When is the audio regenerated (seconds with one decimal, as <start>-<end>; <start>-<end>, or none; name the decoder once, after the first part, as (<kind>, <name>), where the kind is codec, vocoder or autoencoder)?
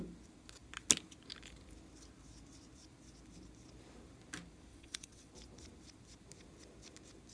4.7-5.3 (vocoder, WaveNeXt)